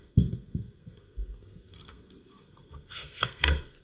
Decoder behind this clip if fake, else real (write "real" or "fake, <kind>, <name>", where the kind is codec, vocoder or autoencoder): fake, codec, SNAC